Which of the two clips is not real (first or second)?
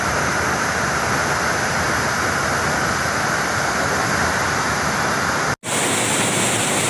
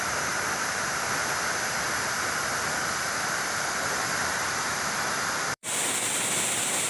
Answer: second